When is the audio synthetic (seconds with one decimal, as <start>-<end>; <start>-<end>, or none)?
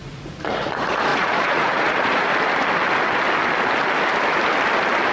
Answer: 0.0-2.3